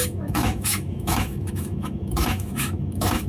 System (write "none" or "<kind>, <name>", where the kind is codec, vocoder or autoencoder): autoencoder, DAC-VAE